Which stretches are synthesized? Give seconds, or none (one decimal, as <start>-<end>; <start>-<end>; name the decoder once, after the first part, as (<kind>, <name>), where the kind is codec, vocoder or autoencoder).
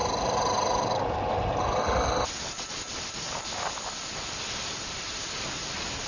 none